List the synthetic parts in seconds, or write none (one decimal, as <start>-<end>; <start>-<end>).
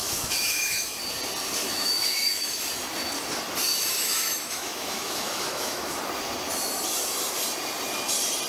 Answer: 0.0-1.0; 1.6-2.6; 3.7-6.0